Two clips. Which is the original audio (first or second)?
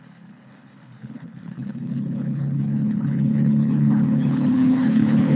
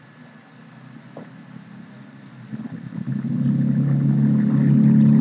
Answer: second